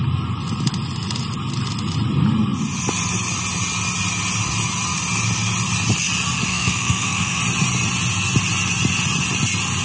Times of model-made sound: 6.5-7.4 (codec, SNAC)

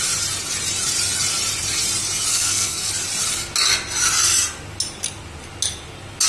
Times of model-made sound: 2.3-2.9 (codec, SNAC)

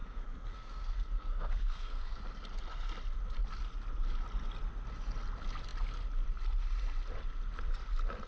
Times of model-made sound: 0.0-2.2 (codec, SNAC)

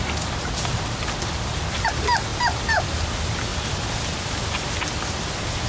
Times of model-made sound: none

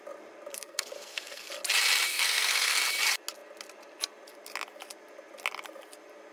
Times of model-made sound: 0.5-1.5 (codec, SNAC); 2.1-2.8

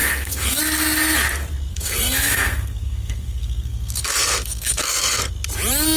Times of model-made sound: 0.0-0.6 (codec, SNAC); 1.7-5.3

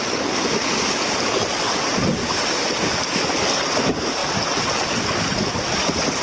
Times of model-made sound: none